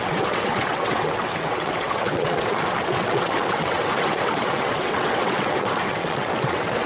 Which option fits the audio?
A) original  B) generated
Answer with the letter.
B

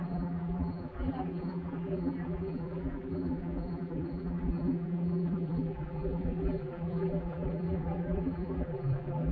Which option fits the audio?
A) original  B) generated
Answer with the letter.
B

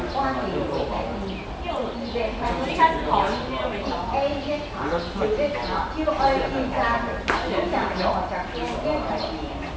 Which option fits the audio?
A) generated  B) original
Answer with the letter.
B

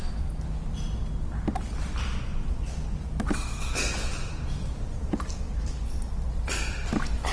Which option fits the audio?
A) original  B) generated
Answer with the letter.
A